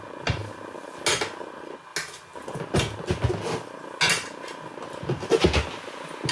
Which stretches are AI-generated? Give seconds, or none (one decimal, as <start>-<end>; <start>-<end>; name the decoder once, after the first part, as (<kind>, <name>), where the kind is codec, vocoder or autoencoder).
none